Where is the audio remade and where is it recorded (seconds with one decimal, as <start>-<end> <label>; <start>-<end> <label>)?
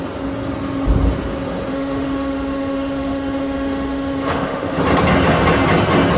0.0-1.7 recorded; 1.7-4.8 remade; 4.8-6.2 recorded